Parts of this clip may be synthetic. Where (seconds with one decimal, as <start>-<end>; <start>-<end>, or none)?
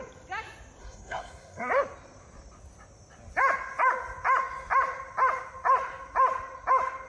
0.8-1.7